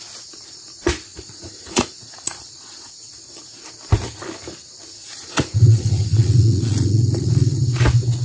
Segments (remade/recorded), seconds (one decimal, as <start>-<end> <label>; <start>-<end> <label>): 0.0-1.1 recorded; 1.1-2.9 remade; 2.9-5.0 recorded; 5.0-7.6 remade; 7.6-8.2 recorded